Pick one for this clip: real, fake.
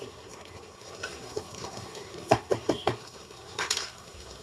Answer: fake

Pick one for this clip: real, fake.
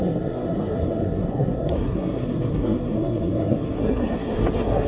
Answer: fake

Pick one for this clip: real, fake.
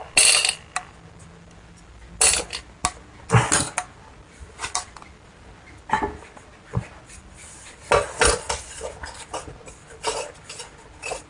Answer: real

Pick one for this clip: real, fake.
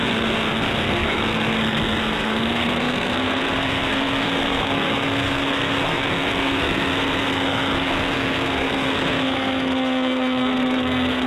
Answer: fake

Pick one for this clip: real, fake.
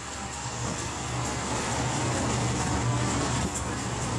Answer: fake